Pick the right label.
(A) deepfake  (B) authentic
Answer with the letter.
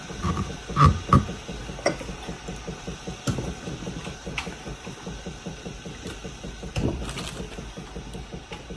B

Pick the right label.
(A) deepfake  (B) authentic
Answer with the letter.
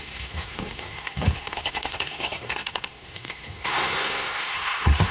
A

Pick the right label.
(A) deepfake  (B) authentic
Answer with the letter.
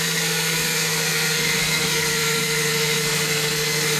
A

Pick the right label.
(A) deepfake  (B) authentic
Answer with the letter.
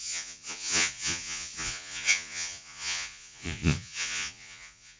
A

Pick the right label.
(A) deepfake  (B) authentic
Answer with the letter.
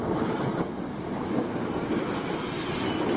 B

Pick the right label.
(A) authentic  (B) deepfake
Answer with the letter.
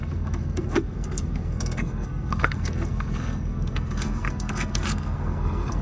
B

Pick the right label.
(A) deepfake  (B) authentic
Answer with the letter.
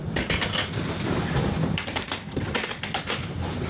B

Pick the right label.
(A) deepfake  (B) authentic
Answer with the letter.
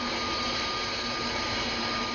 B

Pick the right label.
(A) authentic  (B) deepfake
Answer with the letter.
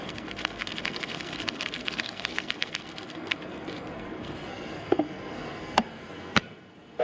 B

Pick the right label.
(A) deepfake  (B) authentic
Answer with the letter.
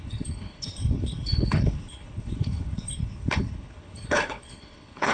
A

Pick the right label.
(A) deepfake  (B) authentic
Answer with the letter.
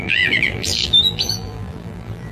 A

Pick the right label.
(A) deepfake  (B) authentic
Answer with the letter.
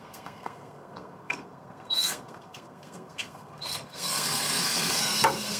A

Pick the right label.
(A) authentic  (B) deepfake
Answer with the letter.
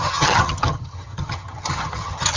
B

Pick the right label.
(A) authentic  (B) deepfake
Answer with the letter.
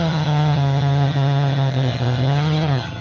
B